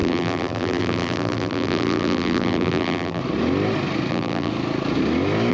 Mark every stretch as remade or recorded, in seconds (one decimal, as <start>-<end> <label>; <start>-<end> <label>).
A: 0.0-3.2 remade; 3.2-4.1 recorded; 4.1-4.5 remade; 4.5-5.5 recorded